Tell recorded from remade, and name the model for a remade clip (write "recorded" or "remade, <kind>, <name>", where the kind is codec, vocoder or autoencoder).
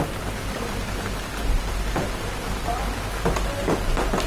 recorded